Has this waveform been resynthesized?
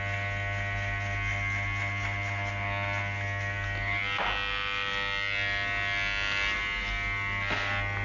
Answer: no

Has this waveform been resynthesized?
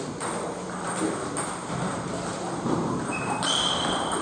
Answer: yes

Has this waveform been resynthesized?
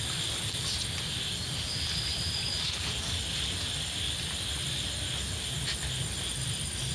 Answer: no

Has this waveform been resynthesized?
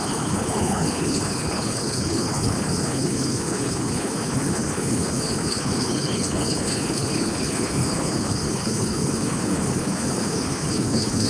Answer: yes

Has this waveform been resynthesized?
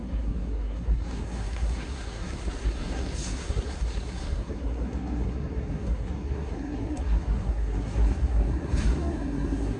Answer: yes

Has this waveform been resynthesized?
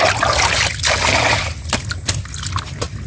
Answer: no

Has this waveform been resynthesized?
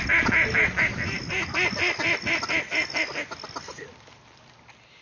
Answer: no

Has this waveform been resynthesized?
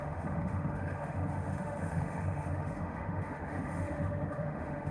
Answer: yes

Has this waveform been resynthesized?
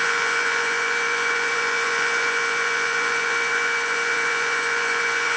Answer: yes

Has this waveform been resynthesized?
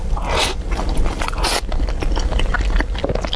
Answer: no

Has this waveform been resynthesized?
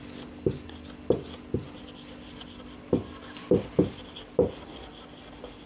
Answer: no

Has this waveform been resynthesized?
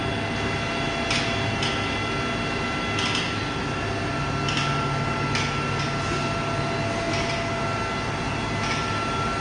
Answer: no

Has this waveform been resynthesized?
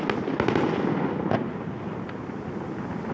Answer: no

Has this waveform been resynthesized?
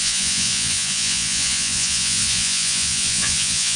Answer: yes